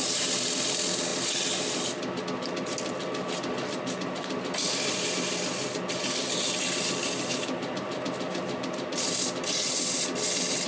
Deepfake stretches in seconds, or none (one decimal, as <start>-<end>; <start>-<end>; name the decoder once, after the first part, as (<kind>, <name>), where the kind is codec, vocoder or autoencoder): none